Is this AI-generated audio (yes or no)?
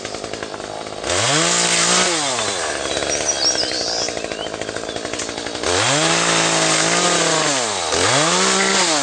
no